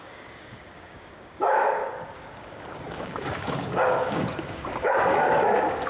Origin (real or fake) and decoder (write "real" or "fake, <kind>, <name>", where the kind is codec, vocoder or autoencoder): fake, codec, DAC